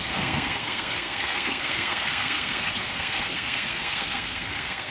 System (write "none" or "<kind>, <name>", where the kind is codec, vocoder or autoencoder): codec, SNAC